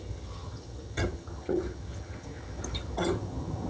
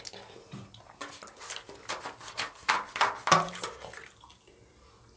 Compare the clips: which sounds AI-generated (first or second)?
first